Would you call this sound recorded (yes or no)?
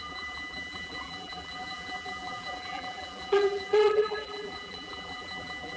no